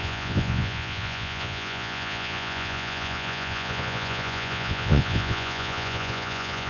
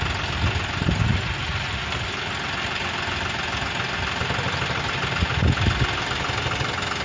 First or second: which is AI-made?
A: first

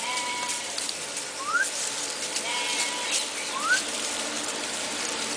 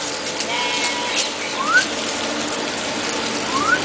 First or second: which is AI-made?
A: first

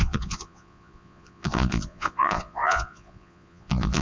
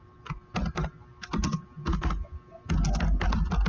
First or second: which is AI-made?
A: first